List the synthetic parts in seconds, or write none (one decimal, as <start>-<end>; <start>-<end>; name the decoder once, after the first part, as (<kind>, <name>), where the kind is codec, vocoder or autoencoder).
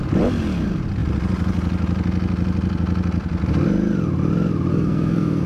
4.7-5.5 (codec, SNAC)